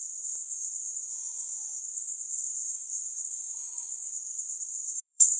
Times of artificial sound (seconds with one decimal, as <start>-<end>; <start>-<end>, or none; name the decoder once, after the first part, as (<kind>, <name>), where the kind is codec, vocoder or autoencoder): 0.0-1.1 (codec, SNAC); 1.8-5.4